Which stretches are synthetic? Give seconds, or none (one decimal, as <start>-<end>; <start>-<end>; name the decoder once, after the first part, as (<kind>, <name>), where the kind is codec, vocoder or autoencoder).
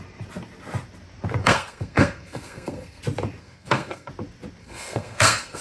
1.4-3.0 (codec, SNAC); 3.4-4.1; 4.6-5.6